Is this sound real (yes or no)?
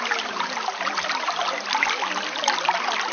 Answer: yes